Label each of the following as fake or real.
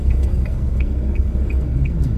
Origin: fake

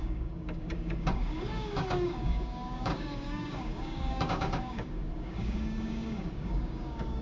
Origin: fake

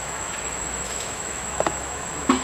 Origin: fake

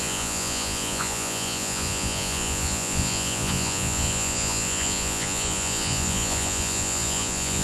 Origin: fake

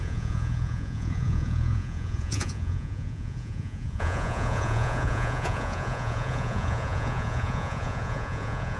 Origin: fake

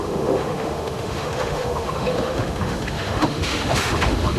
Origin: fake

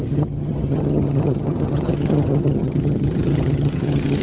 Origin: fake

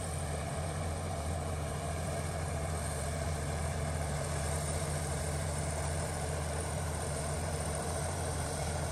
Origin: fake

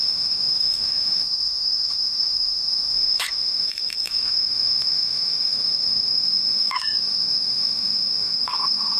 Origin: fake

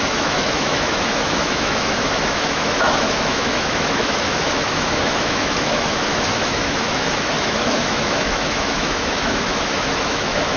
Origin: fake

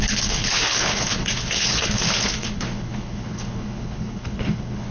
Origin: fake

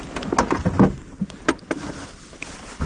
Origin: real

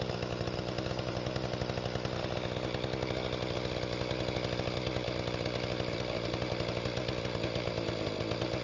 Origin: real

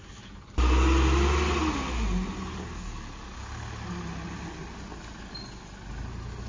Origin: real